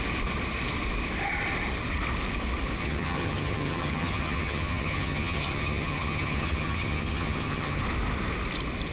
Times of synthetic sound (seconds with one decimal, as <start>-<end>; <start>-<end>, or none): 2.8-7.8